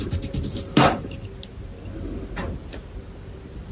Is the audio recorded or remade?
recorded